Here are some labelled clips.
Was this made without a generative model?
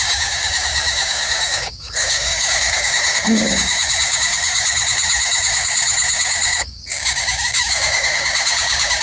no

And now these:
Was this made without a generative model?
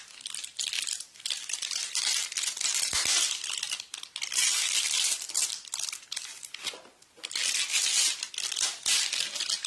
yes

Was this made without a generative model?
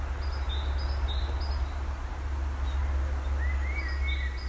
yes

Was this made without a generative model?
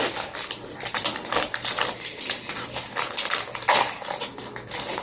yes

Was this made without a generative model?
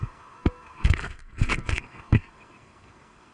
no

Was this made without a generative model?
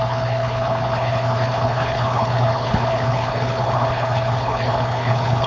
no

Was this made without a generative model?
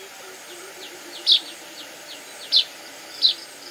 yes